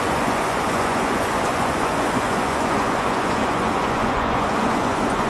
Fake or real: fake